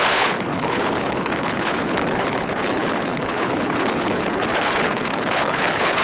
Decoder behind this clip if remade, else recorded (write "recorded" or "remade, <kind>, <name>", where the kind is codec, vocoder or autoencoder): remade, codec, HILCodec